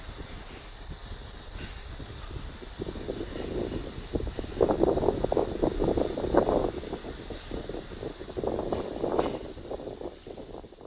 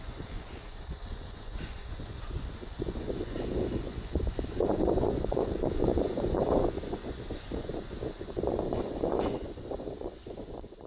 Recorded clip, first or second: first